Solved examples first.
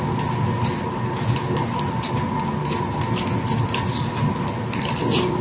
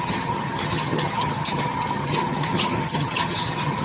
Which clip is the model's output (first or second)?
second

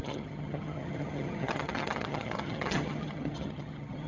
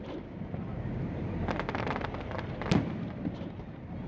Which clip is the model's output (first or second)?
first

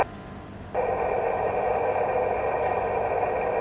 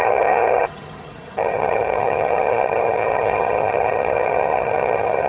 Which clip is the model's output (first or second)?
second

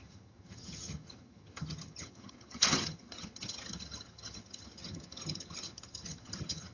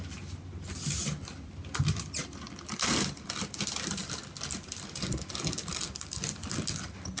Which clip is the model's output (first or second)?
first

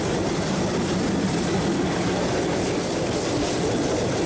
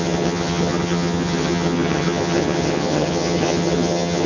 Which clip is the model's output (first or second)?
second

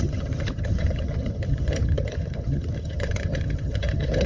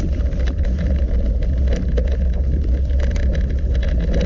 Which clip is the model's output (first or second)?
first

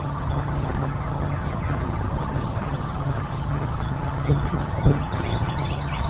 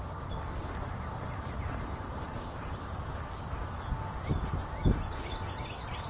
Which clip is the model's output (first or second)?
first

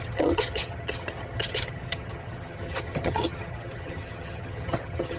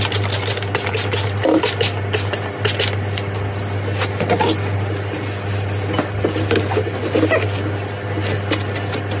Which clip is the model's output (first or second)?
first